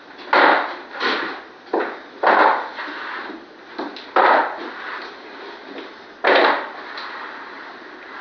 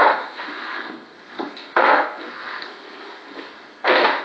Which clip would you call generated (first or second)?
second